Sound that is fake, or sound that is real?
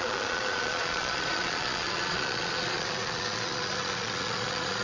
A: fake